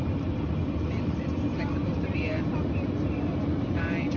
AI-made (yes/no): yes